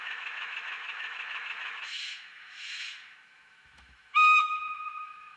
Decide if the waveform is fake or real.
fake